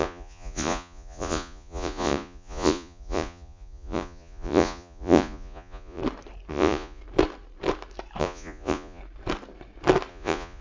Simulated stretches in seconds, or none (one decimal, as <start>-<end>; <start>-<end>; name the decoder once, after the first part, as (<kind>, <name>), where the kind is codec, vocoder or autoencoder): 0.0-6.0 (vocoder, Vocos); 6.5-7.0; 8.2-9.0; 10.1-10.6